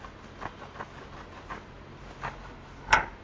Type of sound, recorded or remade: recorded